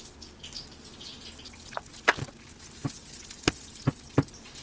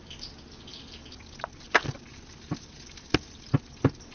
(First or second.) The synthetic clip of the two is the second